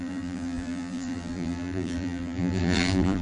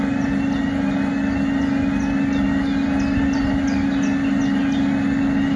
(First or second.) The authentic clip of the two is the second